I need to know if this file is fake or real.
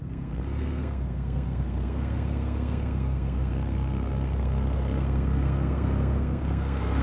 fake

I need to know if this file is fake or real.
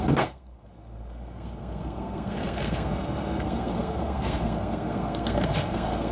fake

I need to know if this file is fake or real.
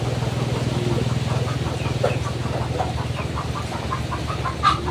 real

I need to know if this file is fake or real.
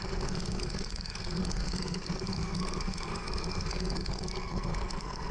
fake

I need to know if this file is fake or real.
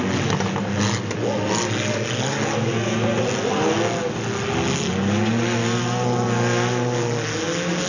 real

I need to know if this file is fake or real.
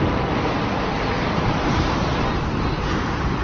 real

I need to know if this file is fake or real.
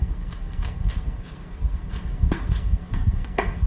fake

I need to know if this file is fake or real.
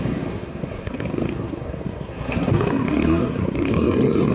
fake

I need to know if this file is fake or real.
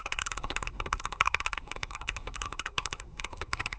fake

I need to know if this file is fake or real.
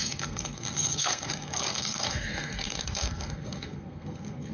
fake